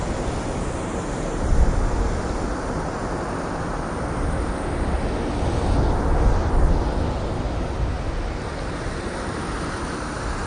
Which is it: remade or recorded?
recorded